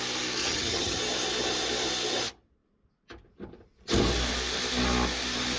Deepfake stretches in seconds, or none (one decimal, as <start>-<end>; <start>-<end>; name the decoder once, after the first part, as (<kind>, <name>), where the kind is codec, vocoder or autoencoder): 0.4-1.0 (vocoder, HiFi-GAN)